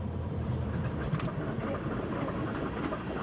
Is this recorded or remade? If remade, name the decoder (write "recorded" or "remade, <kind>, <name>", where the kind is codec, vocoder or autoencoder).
remade, vocoder, BigVGAN v2